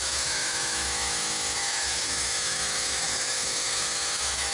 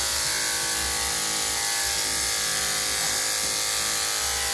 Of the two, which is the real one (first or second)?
second